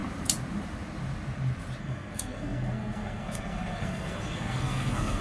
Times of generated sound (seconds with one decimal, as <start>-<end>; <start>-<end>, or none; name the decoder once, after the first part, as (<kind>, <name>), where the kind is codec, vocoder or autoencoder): 1.8-5.2 (codec, SNAC)